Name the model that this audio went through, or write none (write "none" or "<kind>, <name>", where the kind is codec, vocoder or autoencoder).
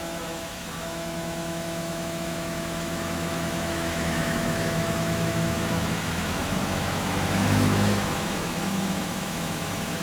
autoencoder, DAC-VAE